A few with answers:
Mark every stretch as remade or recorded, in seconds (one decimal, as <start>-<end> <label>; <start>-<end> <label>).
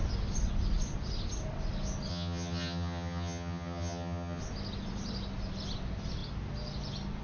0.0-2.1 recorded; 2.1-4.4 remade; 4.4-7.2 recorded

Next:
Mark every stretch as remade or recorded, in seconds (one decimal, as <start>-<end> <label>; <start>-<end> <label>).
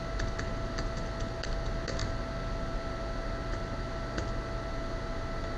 0.0-5.6 recorded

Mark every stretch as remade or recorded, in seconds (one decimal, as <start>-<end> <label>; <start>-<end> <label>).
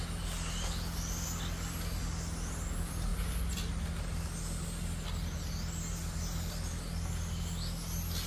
0.0-8.3 recorded